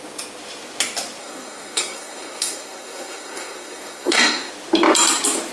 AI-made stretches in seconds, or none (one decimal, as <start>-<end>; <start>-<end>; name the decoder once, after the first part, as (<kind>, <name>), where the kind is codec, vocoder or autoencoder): 1.2-4.5 (codec, SNAC)